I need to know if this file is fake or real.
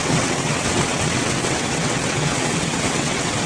fake